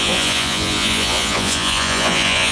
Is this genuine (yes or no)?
no